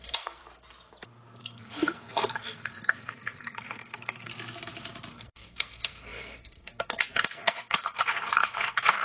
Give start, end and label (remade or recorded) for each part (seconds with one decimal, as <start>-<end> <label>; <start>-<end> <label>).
0.0-0.4 remade; 0.4-1.4 recorded; 1.4-4.3 remade; 4.3-5.1 recorded; 5.1-9.0 remade

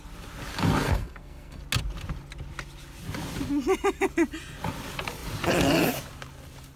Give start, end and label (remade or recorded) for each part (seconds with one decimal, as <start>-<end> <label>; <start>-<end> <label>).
0.0-0.5 recorded; 0.5-1.6 remade; 1.6-6.8 recorded

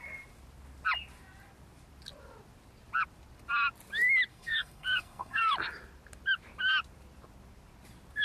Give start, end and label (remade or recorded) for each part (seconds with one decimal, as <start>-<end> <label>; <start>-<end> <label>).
0.0-4.3 recorded; 4.3-5.5 remade; 5.5-8.2 recorded